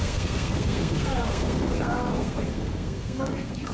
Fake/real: fake